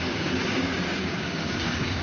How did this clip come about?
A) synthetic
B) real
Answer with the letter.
A